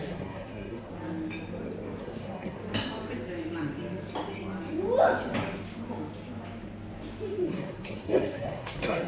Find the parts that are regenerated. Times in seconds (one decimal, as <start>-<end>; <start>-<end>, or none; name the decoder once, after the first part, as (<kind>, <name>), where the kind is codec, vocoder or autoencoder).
0.0-0.9 (codec, SNAC); 2.0-2.6; 7.5-9.1

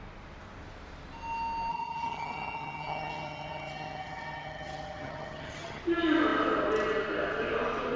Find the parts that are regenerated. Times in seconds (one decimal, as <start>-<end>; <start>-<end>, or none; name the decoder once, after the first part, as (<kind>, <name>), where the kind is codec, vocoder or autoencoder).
1.7-5.8 (vocoder, HiFi-GAN)

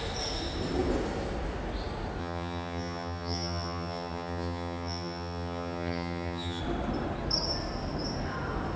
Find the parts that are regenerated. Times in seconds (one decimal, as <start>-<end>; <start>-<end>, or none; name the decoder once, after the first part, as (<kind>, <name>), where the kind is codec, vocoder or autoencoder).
2.2-6.6 (vocoder, HiFi-GAN)

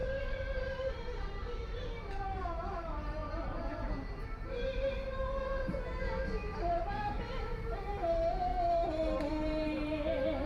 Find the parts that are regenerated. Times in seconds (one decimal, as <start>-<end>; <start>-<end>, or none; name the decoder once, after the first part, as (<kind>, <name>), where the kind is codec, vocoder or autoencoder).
0.9-3.2 (vocoder, BigVGAN v2); 7.4-8.5; 9.2-10.5

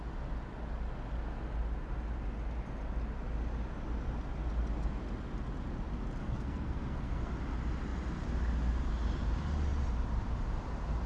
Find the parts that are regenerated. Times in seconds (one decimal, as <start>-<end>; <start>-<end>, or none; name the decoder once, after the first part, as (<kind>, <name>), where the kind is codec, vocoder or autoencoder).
6.2-7.3 (codec, SNAC)

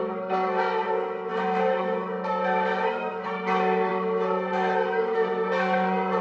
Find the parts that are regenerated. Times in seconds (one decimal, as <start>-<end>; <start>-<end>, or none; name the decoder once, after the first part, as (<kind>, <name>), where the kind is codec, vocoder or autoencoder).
0.0-6.2 (codec, SNAC)

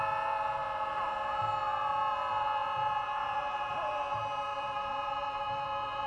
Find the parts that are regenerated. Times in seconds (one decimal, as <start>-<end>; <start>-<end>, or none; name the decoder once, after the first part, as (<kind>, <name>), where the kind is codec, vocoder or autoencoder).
4.5-5.4 (vocoder, BigVGAN v2)

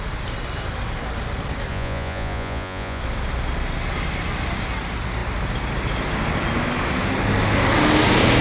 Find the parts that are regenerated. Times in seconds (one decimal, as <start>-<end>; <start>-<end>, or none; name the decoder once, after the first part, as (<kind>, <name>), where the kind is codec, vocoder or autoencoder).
1.7-3.0 (vocoder, Vocos)